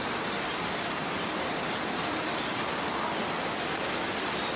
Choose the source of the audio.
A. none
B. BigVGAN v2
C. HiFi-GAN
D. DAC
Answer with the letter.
A